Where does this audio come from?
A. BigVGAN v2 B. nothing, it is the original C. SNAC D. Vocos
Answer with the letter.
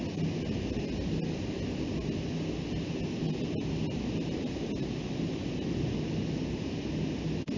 B